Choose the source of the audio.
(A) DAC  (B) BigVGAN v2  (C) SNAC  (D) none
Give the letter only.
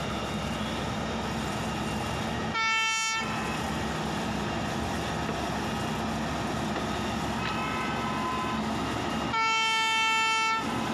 D